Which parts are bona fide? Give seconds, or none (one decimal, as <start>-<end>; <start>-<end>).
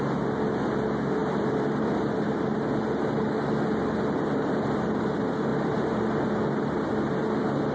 0.0-1.2; 2.3-5.5; 6.2-7.7